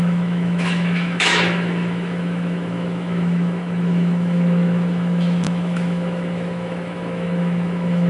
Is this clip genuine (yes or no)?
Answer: no